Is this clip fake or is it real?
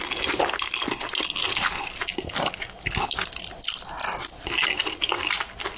real